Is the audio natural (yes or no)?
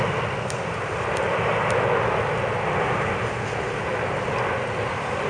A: yes